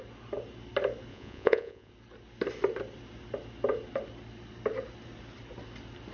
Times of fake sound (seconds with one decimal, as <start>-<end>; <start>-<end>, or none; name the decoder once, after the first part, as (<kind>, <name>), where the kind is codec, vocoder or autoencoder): 1.1-1.9 (vocoder, Vocos)